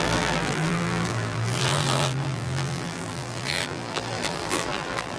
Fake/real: fake